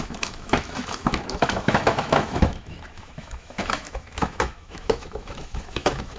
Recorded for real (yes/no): no